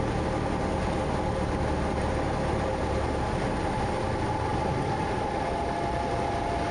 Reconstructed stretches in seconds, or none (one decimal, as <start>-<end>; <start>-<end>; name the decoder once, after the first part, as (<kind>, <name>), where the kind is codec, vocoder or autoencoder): none